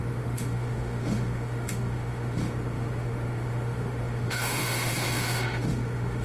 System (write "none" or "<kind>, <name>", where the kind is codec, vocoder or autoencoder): autoencoder, DAC-VAE